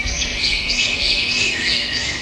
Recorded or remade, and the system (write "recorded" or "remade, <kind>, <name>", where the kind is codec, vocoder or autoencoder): remade, codec, SNAC